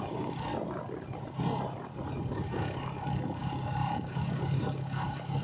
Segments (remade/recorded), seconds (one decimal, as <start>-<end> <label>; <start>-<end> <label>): 0.0-0.5 remade; 0.5-2.2 recorded; 2.2-5.4 remade

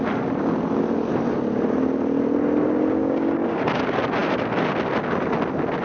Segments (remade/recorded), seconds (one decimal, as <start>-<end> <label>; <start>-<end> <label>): 0.0-3.0 recorded; 3.0-3.6 remade; 3.6-5.8 recorded

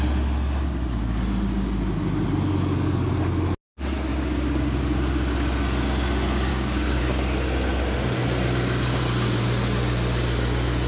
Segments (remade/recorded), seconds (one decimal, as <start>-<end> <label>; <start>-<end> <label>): 0.0-4.1 recorded; 4.1-4.8 remade; 4.8-6.5 recorded; 6.5-7.0 remade; 7.0-10.9 recorded